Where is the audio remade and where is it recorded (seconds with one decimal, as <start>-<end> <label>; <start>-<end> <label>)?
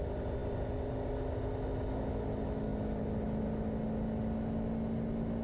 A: 0.0-5.4 recorded